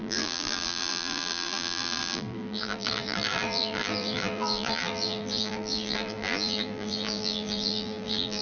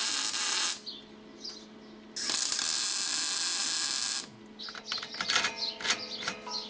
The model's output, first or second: first